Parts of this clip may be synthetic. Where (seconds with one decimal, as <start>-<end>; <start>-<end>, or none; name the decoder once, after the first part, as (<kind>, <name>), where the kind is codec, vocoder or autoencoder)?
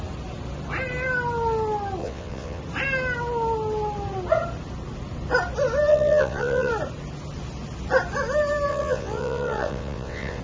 2.0-2.6 (vocoder, WaveNeXt); 5.9-6.7; 8.7-10.4